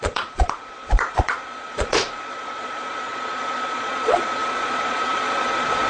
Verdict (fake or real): fake